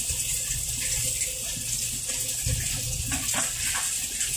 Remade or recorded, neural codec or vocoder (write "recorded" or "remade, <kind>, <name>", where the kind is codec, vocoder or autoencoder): remade, vocoder, BigVGAN v2